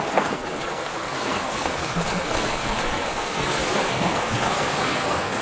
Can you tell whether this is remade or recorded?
remade